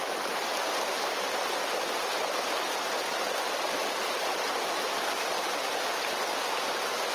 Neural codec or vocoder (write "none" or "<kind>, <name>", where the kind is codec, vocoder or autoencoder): none